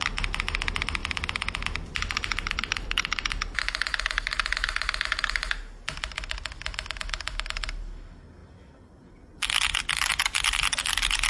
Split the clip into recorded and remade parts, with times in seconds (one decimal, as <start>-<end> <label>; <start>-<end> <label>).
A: 0.0-1.0 recorded; 1.0-3.6 remade; 3.6-11.3 recorded

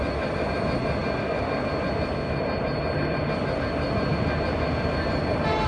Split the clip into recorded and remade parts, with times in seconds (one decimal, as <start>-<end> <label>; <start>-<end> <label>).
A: 0.0-5.7 recorded